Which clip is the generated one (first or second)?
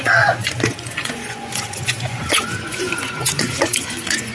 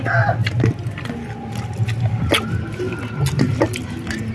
first